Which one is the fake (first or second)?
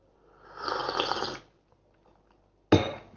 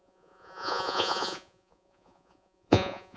second